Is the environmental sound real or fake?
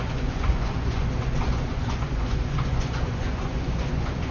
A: fake